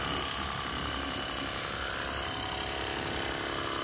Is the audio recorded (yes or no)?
yes